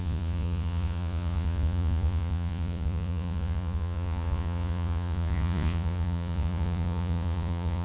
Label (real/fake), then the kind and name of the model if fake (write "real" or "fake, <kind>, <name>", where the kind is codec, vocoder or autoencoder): fake, vocoder, Vocos